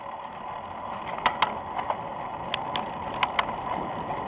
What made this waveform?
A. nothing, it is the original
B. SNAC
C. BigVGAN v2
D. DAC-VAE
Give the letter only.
A